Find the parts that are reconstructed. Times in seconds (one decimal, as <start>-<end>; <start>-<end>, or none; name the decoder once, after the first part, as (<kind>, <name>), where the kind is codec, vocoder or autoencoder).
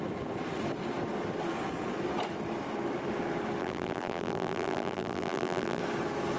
3.6-5.8 (vocoder, BigVGAN v2)